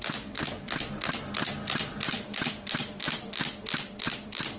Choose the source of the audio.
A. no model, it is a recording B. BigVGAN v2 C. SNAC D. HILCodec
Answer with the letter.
B